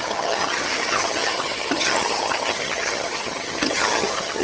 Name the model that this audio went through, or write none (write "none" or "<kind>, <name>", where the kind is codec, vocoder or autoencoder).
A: vocoder, HiFi-GAN